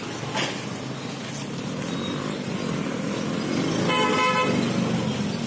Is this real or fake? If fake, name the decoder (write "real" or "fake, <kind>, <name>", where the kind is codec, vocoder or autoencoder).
real